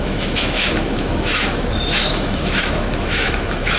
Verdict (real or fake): fake